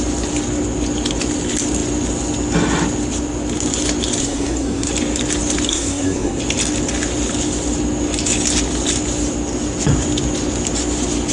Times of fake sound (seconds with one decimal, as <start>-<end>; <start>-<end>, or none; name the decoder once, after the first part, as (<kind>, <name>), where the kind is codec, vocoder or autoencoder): 4.2-4.9 (codec, SNAC); 5.7-6.4